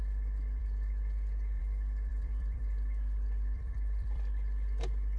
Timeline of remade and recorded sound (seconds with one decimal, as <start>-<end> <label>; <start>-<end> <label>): 0.0-2.1 recorded; 2.1-5.2 remade